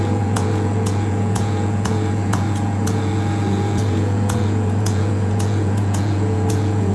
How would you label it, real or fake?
fake